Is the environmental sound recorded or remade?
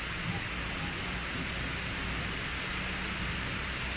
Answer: recorded